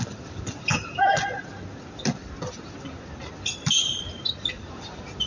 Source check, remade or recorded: recorded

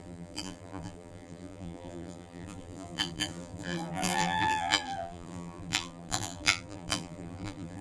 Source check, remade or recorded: remade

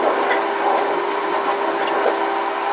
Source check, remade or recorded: recorded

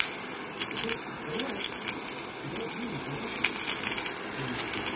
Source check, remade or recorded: recorded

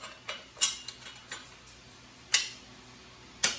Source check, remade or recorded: recorded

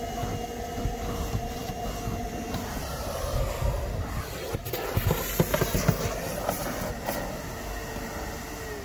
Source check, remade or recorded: recorded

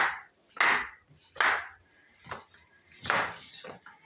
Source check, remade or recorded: recorded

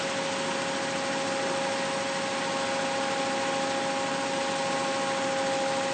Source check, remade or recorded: recorded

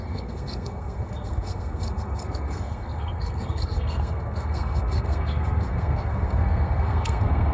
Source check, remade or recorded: remade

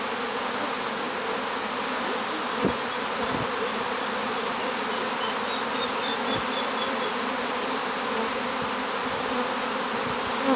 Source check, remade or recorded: recorded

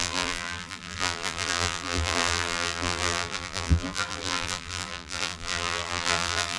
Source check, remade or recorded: remade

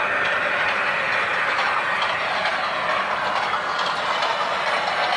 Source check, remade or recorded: recorded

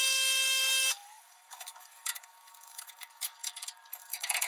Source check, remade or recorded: remade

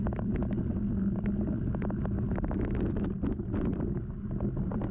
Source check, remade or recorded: recorded